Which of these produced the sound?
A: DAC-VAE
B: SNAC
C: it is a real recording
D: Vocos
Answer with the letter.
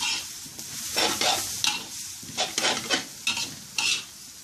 C